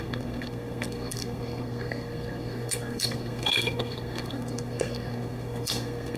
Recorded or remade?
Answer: remade